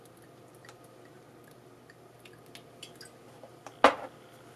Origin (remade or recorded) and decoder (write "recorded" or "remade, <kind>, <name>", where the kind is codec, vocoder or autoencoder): recorded